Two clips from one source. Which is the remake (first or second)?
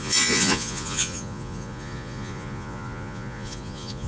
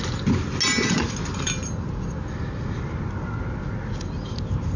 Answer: first